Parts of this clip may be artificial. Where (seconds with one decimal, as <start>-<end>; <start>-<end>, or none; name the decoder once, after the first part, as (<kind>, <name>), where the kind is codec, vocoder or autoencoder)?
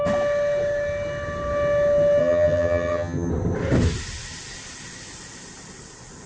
2.2-3.3 (vocoder, HiFi-GAN)